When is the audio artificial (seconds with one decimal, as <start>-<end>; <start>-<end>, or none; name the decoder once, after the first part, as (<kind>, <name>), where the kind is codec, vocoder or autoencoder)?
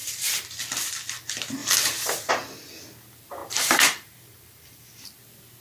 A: 0.0-0.5 (vocoder, BigVGAN v2); 3.4-4.9